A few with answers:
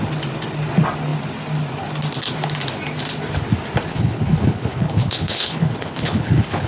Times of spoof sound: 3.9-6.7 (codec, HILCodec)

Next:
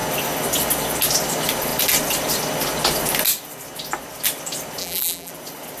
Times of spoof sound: 4.8-5.3 (vocoder, BigVGAN v2)

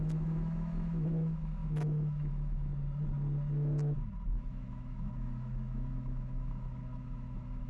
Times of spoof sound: 0.0-2.7 (autoencoder, DAC-VAE); 4.3-7.7